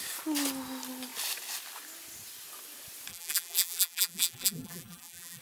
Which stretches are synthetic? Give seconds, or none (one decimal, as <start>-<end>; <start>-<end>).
3.1-5.4